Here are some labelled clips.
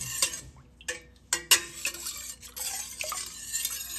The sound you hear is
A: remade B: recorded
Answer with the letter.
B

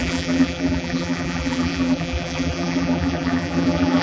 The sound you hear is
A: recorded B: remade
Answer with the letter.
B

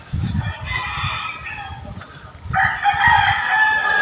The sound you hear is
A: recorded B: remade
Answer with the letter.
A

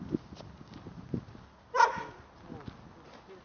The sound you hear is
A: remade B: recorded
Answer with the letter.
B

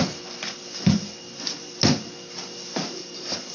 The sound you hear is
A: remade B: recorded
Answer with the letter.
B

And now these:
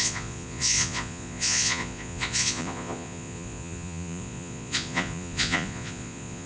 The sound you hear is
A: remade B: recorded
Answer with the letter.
A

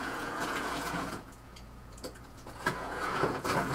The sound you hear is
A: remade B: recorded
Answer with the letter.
A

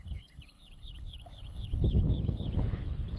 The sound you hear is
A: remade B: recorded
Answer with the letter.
A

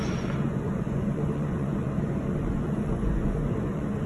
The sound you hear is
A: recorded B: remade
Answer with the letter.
B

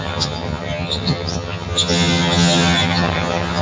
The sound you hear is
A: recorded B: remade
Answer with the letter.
B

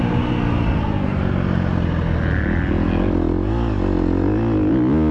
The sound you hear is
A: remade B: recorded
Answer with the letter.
B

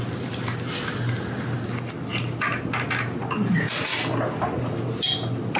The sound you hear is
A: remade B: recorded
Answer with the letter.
B